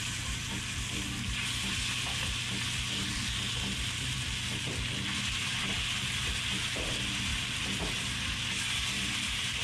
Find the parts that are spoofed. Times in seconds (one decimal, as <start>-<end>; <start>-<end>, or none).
none